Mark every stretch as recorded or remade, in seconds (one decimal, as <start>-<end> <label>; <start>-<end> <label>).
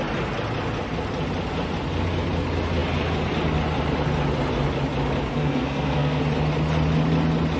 0.0-5.3 recorded; 5.3-6.2 remade; 6.2-7.6 recorded